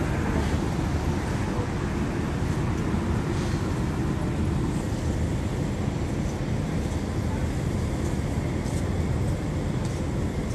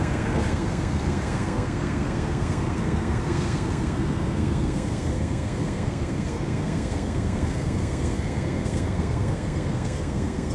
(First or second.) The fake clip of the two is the second